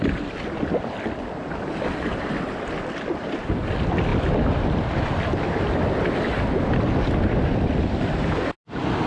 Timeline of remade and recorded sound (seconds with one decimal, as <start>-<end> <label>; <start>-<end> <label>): 0.0-9.1 recorded